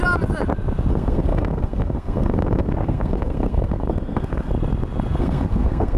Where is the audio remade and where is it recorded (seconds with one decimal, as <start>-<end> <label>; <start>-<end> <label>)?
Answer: 0.0-0.9 recorded; 0.9-4.5 remade; 4.5-5.2 recorded; 5.2-6.0 remade

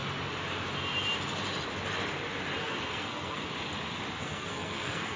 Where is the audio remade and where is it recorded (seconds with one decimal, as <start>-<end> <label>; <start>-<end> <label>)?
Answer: 0.0-2.6 recorded; 2.6-3.4 remade; 3.4-4.2 recorded; 4.2-5.2 remade

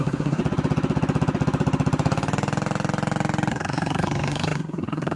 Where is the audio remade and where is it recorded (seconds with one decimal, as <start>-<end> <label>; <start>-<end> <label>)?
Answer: 0.0-0.4 remade; 0.4-3.5 recorded; 3.5-5.2 remade

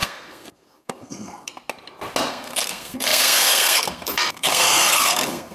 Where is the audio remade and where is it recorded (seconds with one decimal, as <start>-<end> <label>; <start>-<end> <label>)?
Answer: 0.0-1.5 remade; 1.5-2.3 recorded; 2.3-5.5 remade